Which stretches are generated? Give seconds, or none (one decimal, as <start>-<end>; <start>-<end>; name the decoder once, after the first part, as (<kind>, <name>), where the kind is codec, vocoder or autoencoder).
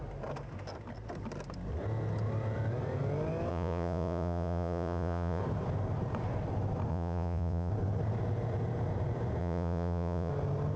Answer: 3.5-5.4 (vocoder, Vocos); 6.9-7.7; 9.4-10.3